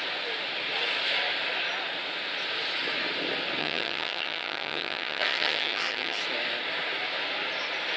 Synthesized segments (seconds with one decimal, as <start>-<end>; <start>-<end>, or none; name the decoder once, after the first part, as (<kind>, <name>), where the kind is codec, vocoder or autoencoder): 3.6-6.2 (vocoder, HiFi-GAN)